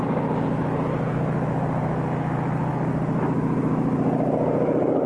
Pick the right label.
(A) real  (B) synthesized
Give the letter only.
A